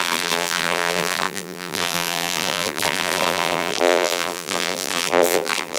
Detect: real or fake fake